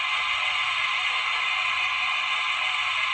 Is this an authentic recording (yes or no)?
yes